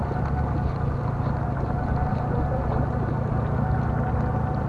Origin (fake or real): real